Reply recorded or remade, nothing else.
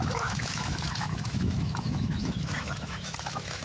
remade